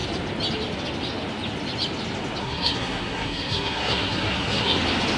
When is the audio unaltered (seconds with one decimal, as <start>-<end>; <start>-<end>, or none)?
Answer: 0.0-2.4; 4.8-5.2